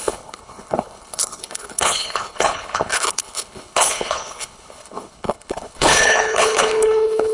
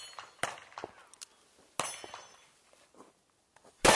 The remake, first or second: first